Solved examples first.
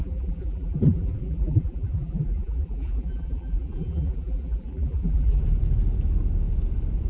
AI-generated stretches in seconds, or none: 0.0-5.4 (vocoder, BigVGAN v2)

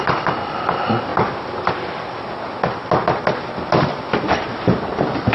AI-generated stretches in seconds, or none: none

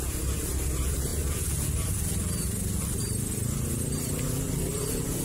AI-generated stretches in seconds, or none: 0.0-5.2 (vocoder, BigVGAN v2)